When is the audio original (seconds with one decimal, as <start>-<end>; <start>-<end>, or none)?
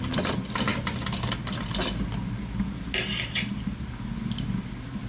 0.0-5.1